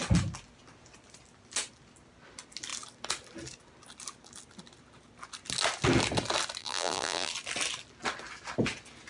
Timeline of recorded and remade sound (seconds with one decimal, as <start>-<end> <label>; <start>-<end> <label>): 0.0-6.6 recorded; 6.6-7.3 remade; 7.3-9.1 recorded